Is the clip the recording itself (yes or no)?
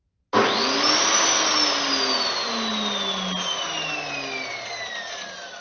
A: yes